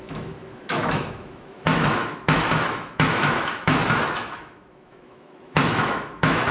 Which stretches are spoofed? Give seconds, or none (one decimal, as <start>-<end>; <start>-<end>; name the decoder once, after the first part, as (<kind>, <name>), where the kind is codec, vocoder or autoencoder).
0.0-6.5 (autoencoder, DAC-VAE)